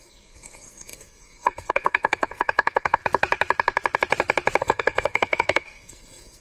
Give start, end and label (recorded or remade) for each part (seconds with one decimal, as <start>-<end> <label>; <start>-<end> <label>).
0.0-3.0 remade; 3.0-4.6 recorded; 4.6-6.4 remade